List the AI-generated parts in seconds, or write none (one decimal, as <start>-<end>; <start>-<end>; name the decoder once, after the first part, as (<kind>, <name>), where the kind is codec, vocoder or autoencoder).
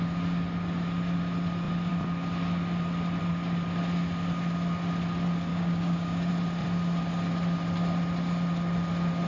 5.5-6.3 (codec, DAC)